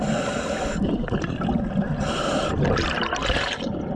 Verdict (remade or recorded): recorded